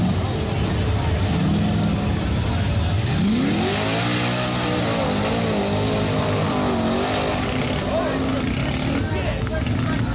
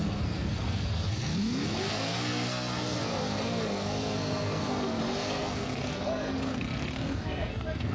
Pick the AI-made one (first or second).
second